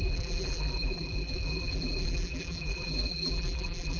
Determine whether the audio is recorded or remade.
remade